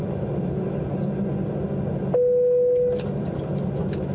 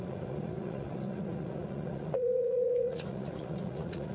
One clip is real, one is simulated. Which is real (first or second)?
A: first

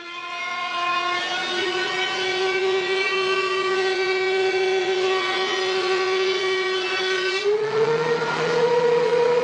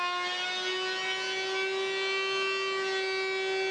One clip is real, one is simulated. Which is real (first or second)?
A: second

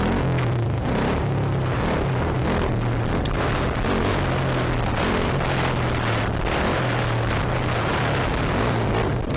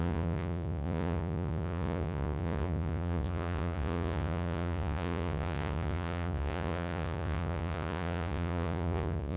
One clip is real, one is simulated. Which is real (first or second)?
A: first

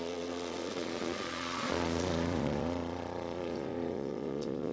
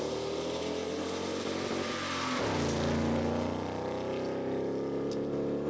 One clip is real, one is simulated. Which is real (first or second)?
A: second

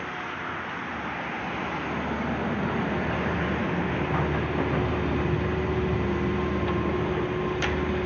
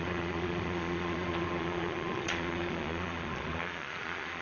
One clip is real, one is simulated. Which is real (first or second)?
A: first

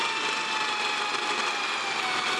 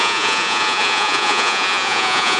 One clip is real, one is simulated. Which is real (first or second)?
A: first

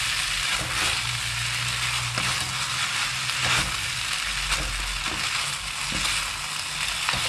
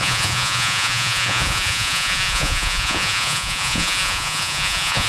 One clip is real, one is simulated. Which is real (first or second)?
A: first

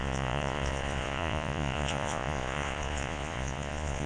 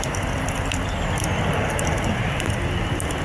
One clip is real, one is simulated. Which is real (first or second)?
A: second